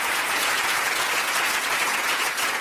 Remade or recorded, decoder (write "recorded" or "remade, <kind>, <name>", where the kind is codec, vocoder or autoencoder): remade, vocoder, Vocos